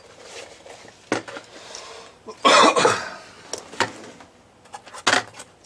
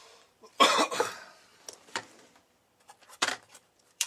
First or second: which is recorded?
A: first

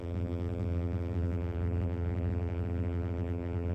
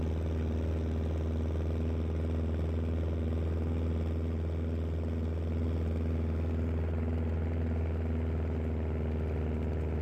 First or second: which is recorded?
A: second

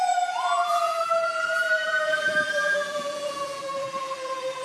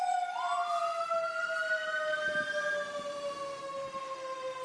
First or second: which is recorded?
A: second